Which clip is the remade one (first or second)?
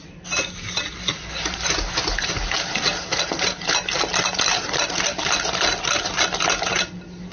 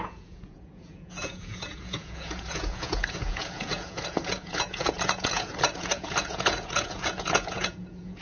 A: second